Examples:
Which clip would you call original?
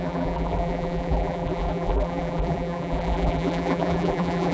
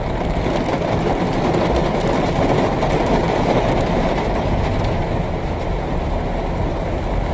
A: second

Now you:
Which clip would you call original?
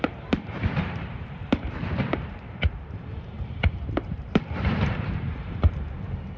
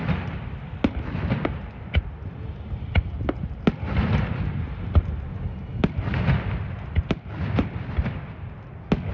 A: second